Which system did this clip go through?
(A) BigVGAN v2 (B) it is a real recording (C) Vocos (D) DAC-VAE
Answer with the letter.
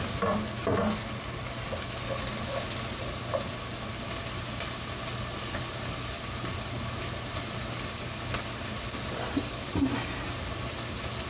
B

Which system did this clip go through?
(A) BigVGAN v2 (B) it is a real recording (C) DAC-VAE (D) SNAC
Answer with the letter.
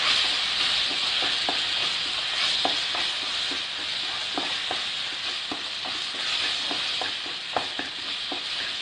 B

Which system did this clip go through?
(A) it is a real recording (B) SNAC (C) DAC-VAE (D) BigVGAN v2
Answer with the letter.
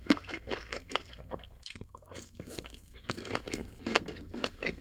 B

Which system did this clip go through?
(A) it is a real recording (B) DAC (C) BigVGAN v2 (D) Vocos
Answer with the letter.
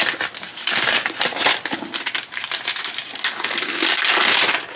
A